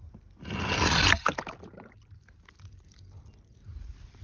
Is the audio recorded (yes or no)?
yes